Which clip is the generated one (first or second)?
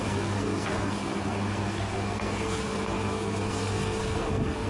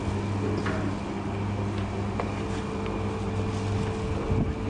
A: first